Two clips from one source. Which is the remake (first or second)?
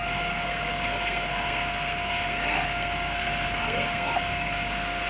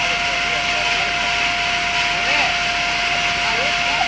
first